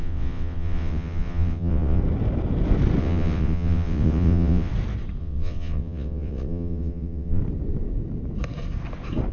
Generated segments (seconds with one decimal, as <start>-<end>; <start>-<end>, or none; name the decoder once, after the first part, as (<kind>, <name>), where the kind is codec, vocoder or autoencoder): 0.0-2.0 (vocoder, WaveNeXt); 3.0-4.7; 5.2-7.4